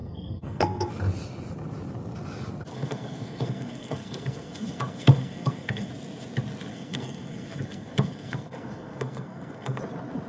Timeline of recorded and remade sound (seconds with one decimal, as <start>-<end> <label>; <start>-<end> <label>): 0.0-0.9 remade; 0.9-2.7 recorded; 2.7-5.9 remade; 5.9-6.7 recorded; 6.7-9.8 remade; 9.8-10.3 recorded